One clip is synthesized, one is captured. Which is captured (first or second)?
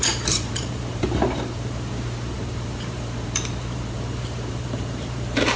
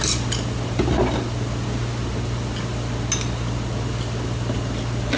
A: second